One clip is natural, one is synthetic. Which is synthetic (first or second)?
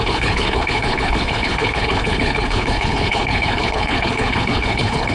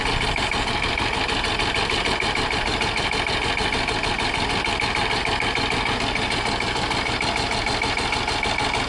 first